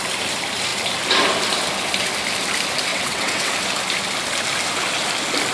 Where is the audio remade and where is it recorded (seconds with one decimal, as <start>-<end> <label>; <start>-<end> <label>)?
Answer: 0.0-2.9 recorded; 2.9-3.5 remade; 3.5-5.5 recorded